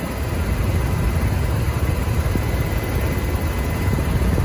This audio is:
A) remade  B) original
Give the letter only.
B